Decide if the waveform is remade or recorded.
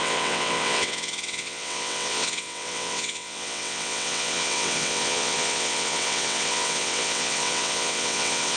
remade